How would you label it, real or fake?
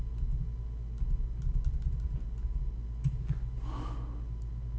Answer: real